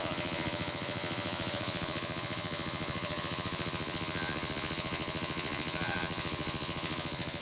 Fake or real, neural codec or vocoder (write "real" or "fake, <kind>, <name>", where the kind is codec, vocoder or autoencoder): fake, vocoder, Vocos